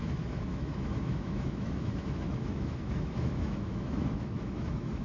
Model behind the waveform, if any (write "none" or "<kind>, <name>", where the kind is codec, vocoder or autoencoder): autoencoder, DAC-VAE